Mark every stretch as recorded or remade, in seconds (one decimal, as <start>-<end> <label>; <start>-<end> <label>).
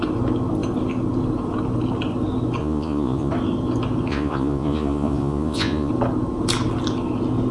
0.0-2.6 recorded; 2.6-3.3 remade; 3.3-4.1 recorded; 4.1-5.9 remade; 5.9-7.5 recorded